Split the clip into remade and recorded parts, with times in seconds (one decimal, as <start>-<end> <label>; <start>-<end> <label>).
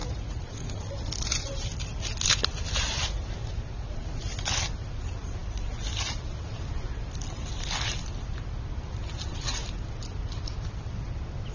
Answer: 0.0-0.9 remade; 0.9-3.4 recorded; 3.4-4.2 remade; 4.2-11.5 recorded